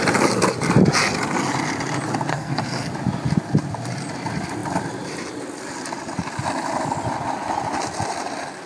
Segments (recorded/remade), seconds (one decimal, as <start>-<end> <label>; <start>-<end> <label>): 0.0-2.3 recorded; 2.3-2.9 remade; 2.9-8.7 recorded